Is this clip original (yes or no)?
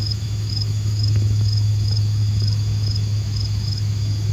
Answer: no